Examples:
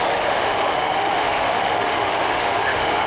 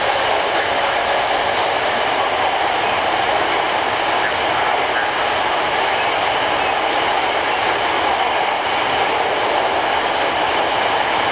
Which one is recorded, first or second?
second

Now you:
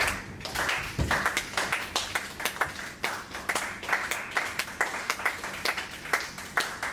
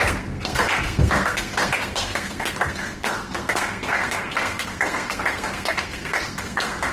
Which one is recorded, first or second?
first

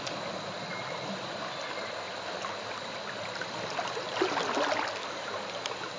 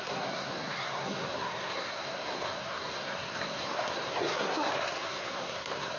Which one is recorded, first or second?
first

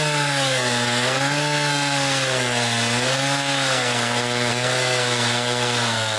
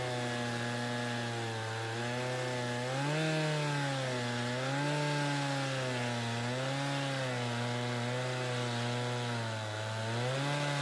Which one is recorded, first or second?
second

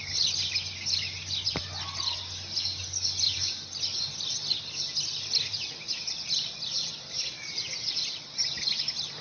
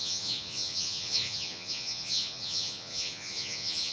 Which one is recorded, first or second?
first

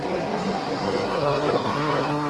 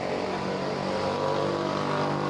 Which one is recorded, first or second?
second